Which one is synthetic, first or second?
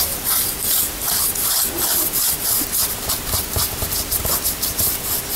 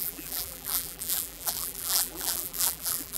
second